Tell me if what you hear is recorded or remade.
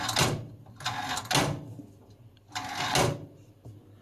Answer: recorded